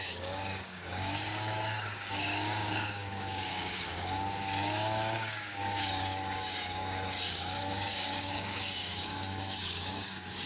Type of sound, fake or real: fake